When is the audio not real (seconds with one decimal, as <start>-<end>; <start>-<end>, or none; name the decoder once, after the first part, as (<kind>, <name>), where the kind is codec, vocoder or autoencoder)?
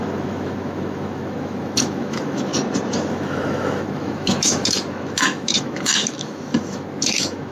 0.0-2.5 (autoencoder, DAC-VAE); 3.1-7.5